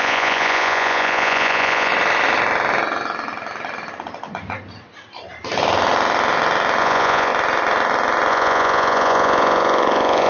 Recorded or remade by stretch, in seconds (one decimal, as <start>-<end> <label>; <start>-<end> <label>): 0.0-1.9 remade; 1.9-6.8 recorded; 6.8-7.3 remade; 7.3-8.3 recorded; 8.3-10.3 remade